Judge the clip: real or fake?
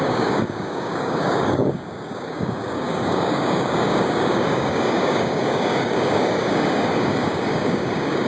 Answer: fake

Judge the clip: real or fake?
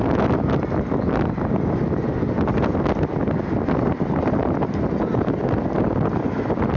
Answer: real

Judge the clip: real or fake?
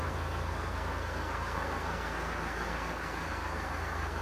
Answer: fake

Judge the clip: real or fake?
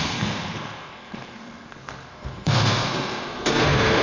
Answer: fake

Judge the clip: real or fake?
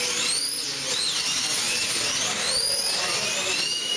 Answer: real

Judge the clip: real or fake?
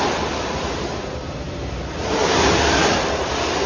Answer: real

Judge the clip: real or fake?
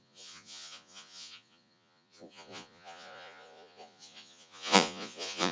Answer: fake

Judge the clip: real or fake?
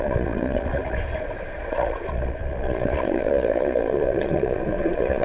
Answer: fake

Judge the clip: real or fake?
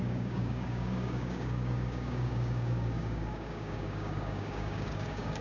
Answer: fake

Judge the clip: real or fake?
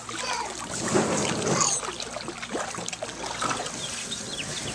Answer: real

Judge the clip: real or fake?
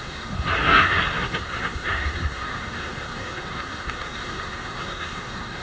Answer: fake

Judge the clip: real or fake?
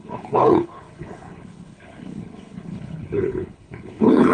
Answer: fake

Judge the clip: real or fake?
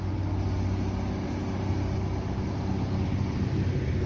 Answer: real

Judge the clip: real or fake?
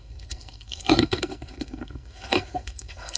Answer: fake